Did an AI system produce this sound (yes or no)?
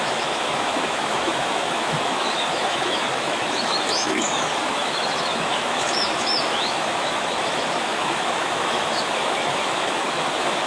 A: yes